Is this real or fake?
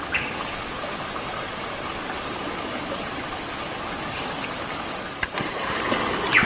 real